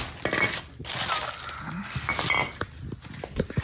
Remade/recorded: recorded